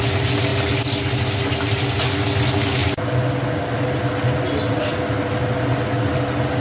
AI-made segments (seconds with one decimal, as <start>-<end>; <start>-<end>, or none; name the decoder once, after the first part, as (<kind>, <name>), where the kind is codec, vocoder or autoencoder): none